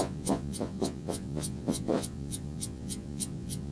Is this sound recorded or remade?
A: remade